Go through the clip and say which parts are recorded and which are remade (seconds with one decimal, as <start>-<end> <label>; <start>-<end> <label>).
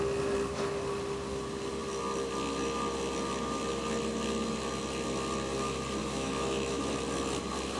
0.0-6.0 recorded; 6.0-6.8 remade; 6.8-7.8 recorded